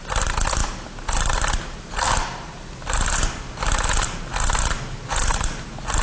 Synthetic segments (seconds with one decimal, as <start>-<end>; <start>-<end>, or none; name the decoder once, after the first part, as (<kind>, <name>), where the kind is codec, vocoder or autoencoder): none